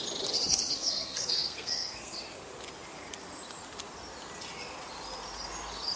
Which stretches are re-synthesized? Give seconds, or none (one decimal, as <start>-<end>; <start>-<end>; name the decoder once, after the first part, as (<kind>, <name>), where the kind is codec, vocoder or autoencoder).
0.5-2.2 (codec, SNAC)